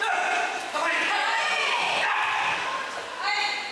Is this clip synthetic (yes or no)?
no